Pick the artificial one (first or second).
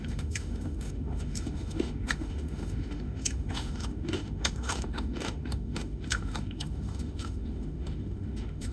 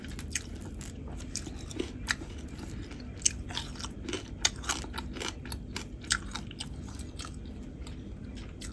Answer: first